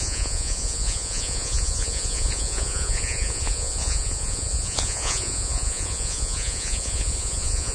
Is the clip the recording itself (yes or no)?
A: no